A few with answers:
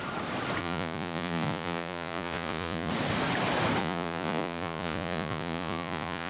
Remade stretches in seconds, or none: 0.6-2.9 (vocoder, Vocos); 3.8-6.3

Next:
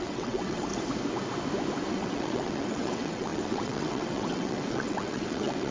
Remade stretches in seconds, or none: 0.0-0.7 (vocoder, WaveNeXt); 1.9-5.7

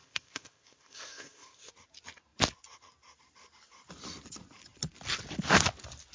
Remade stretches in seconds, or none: 0.0-1.7 (codec, ZipCodec)

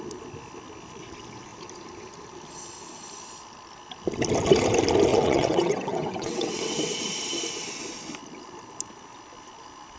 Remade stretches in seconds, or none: 5.1-7.0 (vocoder, WaveNeXt)